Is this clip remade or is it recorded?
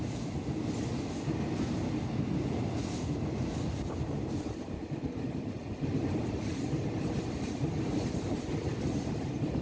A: recorded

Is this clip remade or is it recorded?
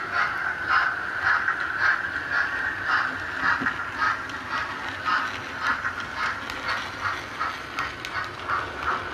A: recorded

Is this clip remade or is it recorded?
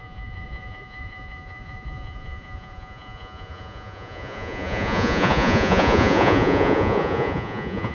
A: remade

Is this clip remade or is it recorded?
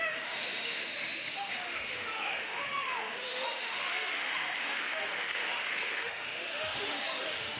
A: remade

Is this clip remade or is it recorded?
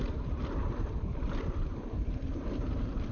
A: remade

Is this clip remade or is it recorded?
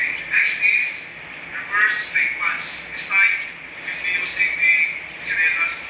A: recorded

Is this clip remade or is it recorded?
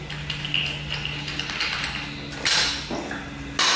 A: recorded